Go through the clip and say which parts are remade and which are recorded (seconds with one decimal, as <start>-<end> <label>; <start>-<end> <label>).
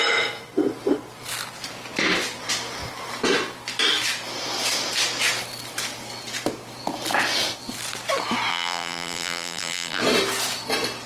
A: 0.0-8.5 recorded; 8.5-10.0 remade; 10.0-11.1 recorded